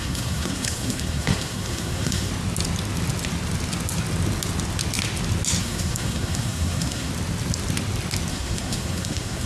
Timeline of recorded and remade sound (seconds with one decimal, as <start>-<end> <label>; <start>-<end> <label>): 0.0-2.3 remade; 2.3-5.6 recorded; 5.6-7.1 remade; 7.1-8.3 recorded; 8.3-9.5 remade